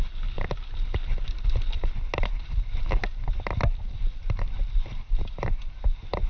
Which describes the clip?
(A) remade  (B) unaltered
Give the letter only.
B